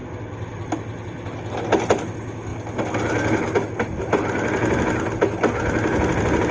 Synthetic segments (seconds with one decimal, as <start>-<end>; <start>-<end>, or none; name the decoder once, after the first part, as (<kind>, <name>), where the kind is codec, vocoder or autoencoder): none